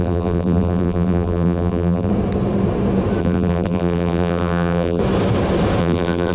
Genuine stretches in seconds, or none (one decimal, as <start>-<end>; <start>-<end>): 2.1-3.2; 5.0-5.8